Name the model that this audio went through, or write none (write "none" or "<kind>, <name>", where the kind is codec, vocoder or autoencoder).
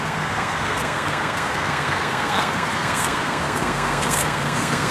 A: codec, SNAC